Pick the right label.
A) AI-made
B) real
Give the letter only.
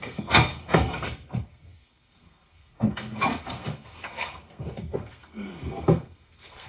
A